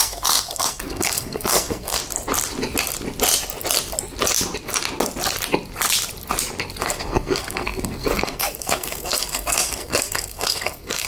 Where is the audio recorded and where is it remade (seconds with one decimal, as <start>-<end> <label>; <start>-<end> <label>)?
0.0-2.0 remade; 2.0-6.8 recorded; 6.8-11.1 remade